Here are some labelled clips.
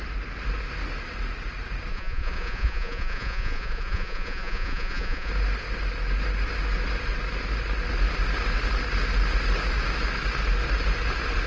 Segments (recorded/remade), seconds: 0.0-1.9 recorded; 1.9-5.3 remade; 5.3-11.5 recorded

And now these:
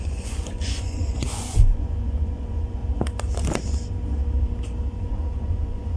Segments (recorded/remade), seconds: 0.0-2.8 remade; 2.8-5.0 recorded; 5.0-6.0 remade

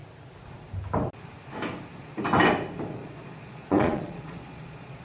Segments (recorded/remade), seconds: 0.0-3.0 recorded; 3.0-5.0 remade

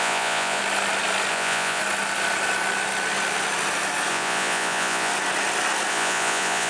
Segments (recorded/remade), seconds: 0.0-0.6 remade; 0.6-1.3 recorded; 1.3-1.8 remade; 1.8-4.1 recorded; 4.1-5.1 remade; 5.1-5.9 recorded; 5.9-6.7 remade

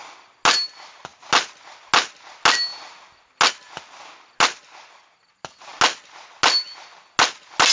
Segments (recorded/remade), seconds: 0.0-7.7 recorded